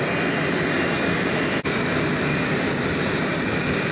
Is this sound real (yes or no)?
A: no